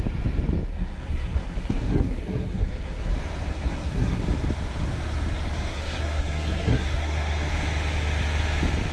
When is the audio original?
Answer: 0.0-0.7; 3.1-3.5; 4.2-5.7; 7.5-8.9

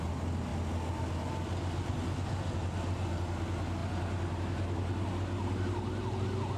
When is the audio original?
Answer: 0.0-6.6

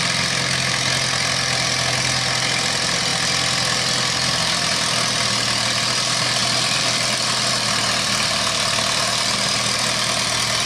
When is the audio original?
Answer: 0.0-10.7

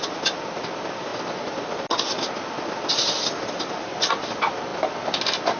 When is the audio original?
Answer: 0.0-5.6

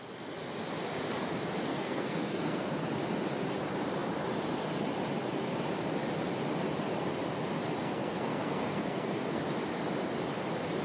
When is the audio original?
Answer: 0.0-1.7; 2.7-7.8; 9.4-10.8

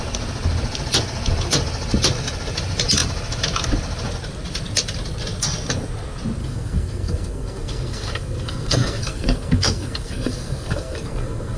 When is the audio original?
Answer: 0.0-6.4

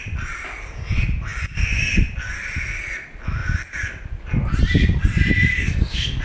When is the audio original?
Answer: 0.0-5.5

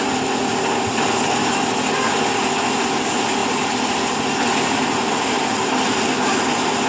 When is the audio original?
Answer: 0.0-6.9